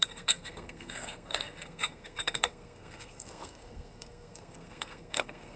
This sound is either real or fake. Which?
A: fake